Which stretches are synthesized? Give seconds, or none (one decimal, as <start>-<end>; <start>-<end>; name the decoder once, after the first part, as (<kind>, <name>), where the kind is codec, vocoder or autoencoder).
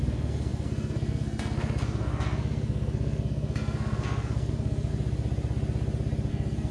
0.0-4.9 (codec, SNAC); 6.3-6.7